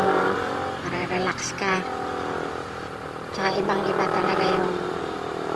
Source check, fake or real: fake